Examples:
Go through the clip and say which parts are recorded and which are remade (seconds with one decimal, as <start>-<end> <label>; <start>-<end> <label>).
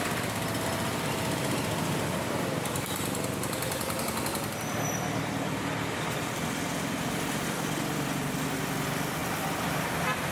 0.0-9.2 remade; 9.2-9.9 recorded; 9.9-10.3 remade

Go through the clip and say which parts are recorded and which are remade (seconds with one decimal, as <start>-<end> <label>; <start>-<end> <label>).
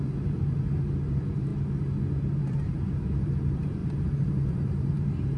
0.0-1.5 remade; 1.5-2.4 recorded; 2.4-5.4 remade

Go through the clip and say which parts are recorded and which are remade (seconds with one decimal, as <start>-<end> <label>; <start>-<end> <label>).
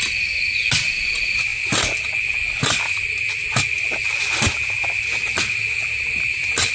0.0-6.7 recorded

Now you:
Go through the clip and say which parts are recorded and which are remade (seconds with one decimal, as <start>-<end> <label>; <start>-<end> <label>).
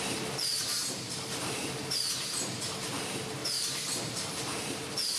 0.0-0.5 recorded; 0.5-2.1 remade; 2.1-3.4 recorded; 3.4-5.2 remade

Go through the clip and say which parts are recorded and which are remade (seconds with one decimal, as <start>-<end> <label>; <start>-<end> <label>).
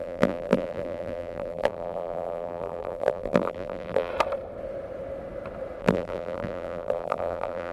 0.0-4.1 remade; 4.1-5.8 recorded; 5.8-7.7 remade